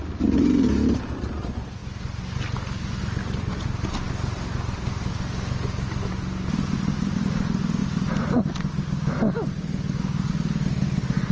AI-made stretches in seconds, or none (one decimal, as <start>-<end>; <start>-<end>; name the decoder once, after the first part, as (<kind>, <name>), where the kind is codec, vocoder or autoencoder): none